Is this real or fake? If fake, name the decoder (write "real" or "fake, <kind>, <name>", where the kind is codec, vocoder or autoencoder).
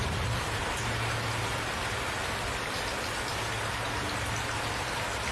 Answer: real